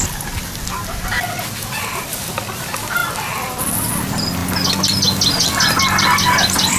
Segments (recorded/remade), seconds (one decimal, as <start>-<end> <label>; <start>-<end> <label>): 0.0-3.0 recorded; 3.0-3.9 remade; 3.9-6.8 recorded

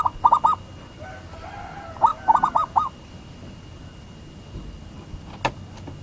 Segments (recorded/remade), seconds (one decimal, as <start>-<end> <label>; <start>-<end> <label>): 0.0-6.0 recorded

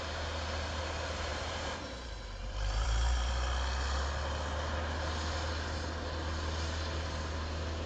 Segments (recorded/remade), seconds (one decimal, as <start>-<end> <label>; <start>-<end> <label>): 0.0-1.3 recorded; 1.3-3.3 remade; 3.3-7.9 recorded

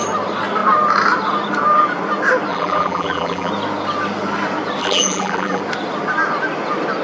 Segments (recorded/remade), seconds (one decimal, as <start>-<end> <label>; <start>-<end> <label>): 0.0-2.5 recorded; 2.5-3.5 remade; 3.5-4.8 recorded; 4.8-5.6 remade; 5.6-7.0 recorded

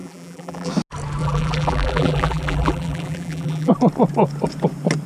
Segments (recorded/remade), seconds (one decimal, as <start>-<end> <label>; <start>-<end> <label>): 0.0-0.7 remade; 0.7-1.2 recorded; 1.2-3.7 remade; 3.7-5.1 recorded

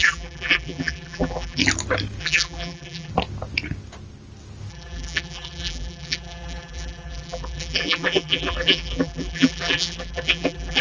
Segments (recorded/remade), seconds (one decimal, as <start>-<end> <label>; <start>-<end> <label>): 0.0-1.6 remade; 1.6-2.2 recorded; 2.2-3.1 remade; 3.1-4.7 recorded; 4.7-10.8 remade

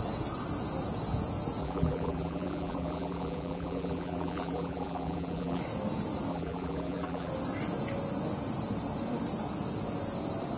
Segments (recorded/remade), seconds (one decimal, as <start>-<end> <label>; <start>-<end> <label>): 0.0-1.6 recorded; 1.6-5.6 remade; 5.6-6.3 recorded; 6.3-7.3 remade; 7.3-10.6 recorded